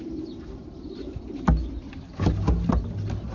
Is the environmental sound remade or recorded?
recorded